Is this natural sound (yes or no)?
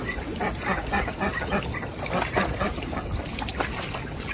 yes